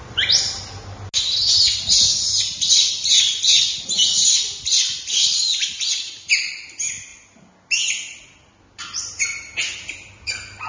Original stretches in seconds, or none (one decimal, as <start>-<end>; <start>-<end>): 0.0-10.7